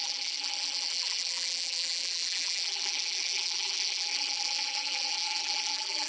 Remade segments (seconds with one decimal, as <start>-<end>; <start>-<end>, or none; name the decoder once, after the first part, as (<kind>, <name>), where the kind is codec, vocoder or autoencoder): 0.0-6.1 (vocoder, BigVGAN v2)